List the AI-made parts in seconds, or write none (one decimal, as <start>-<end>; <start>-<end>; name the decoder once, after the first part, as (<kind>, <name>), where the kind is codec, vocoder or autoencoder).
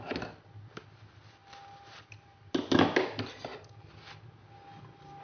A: 1.4-2.5 (vocoder, BigVGAN v2)